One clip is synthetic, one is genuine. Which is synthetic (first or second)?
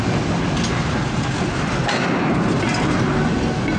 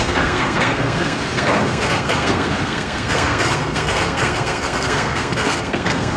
second